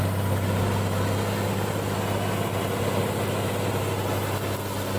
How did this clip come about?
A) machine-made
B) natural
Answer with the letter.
B